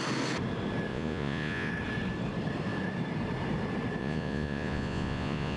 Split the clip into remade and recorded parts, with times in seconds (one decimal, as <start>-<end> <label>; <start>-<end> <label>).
0.0-0.9 recorded; 0.9-1.7 remade; 1.7-4.0 recorded; 4.0-5.6 remade